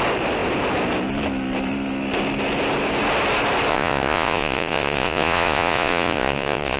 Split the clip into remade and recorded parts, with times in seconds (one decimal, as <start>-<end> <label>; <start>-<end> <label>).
0.0-3.7 recorded; 3.7-6.8 remade